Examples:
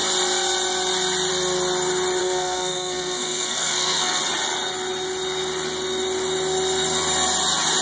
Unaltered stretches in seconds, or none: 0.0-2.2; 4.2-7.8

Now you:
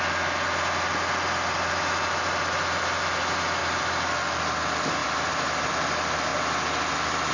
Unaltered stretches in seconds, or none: 0.0-3.6; 4.1-5.0; 5.7-7.3

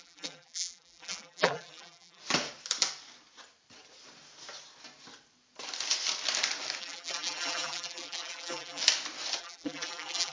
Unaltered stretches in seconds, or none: 2.2-6.8; 8.8-9.4